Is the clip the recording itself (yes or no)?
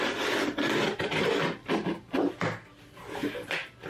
yes